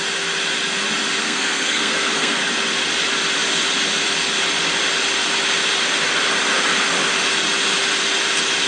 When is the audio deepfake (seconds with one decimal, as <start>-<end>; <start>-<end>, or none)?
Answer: 1.2-2.4